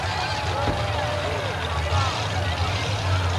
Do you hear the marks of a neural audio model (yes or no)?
no